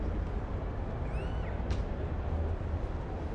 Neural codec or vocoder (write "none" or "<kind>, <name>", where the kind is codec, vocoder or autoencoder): none